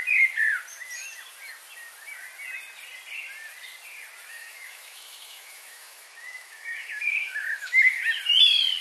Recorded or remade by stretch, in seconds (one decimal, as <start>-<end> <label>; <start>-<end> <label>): 0.0-4.3 recorded; 4.3-8.0 remade; 8.0-8.8 recorded